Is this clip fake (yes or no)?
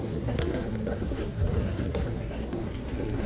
yes